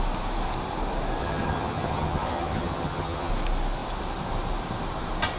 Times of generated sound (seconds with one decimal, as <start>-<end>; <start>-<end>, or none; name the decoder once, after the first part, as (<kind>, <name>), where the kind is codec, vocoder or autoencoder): 1.2-3.3 (vocoder, HiFi-GAN)